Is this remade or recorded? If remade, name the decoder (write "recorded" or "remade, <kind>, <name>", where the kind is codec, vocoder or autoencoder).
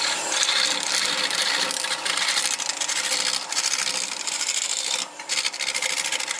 recorded